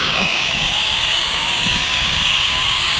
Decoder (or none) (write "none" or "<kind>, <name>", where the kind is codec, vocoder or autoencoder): codec, DAC